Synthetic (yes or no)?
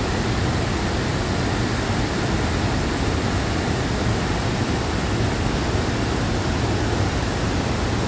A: no